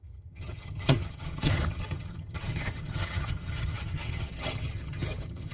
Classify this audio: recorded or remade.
remade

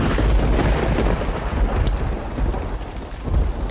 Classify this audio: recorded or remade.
recorded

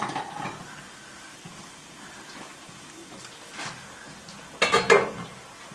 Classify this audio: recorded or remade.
recorded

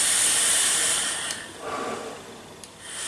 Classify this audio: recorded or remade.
remade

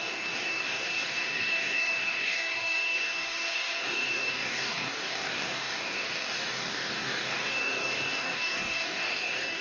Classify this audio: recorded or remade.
remade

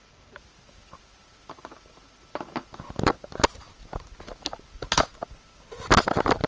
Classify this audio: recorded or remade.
recorded